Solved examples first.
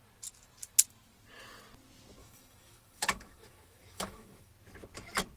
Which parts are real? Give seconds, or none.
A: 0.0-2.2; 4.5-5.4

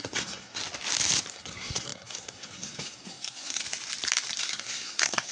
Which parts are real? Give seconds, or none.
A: 0.6-1.3; 3.6-4.4

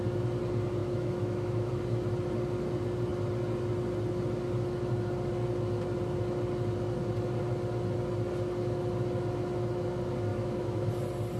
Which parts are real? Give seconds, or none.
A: 0.0-0.8; 1.7-10.3; 10.9-11.4